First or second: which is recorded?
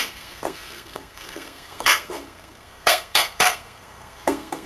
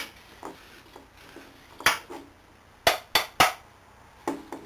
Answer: second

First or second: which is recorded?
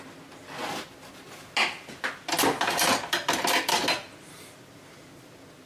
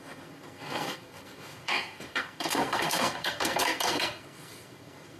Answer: first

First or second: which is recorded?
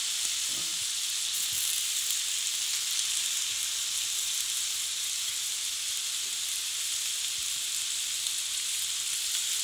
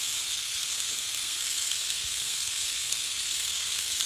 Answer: first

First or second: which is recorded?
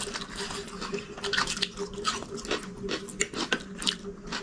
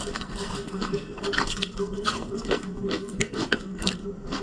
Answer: first